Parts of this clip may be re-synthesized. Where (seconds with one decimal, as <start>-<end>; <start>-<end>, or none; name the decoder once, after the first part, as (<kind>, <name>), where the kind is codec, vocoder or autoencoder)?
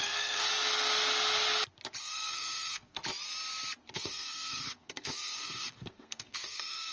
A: 0.0-0.5 (codec, SNAC); 2.0-3.0; 3.9-6.9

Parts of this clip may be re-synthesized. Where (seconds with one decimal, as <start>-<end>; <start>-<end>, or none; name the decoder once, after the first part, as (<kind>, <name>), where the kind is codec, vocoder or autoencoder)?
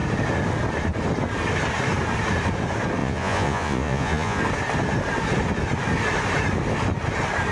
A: 3.0-4.4 (vocoder, Vocos)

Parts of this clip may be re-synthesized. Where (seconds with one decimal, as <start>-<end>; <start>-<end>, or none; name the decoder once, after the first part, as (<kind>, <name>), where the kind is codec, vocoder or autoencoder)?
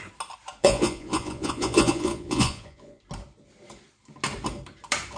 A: 0.6-3.0 (vocoder, Vocos)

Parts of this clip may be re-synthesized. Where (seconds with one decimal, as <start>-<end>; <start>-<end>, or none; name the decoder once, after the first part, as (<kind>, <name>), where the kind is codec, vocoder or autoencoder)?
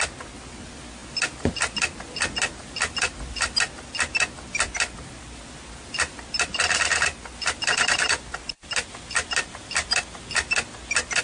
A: none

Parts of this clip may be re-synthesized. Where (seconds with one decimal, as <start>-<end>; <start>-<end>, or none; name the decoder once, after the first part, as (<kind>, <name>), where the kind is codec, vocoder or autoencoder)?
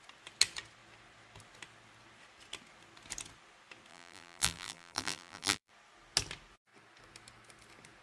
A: 3.9-5.7 (vocoder, BigVGAN v2)